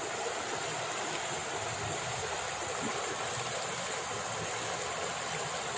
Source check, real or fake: real